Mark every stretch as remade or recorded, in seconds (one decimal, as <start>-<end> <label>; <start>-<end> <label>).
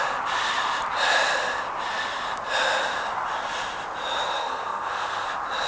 0.0-4.3 recorded; 4.3-5.3 remade; 5.3-5.7 recorded